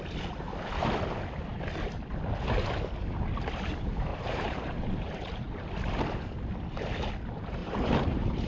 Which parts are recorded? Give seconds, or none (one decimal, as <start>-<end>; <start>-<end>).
0.0-4.1; 5.6-7.6